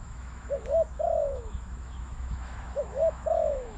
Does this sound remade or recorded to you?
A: remade